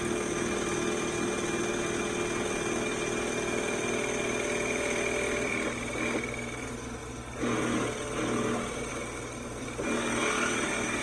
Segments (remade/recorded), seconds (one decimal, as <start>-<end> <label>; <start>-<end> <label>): 0.0-11.0 recorded